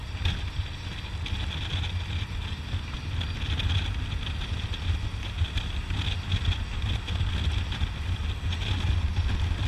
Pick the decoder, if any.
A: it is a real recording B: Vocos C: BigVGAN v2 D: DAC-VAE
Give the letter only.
A